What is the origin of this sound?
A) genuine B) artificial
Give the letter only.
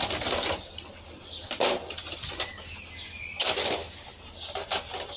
A